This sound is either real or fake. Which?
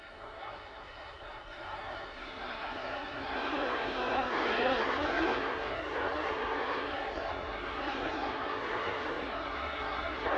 fake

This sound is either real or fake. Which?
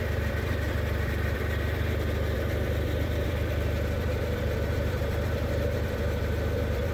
fake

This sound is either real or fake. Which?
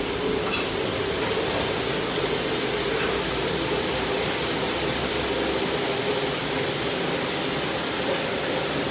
real